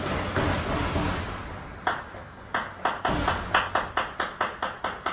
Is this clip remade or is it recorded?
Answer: recorded